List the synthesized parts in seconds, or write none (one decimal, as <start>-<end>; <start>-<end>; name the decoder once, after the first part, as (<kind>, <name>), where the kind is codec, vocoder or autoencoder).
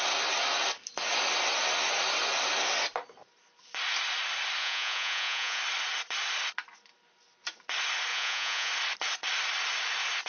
4.6-5.6 (vocoder, Vocos); 8.1-8.7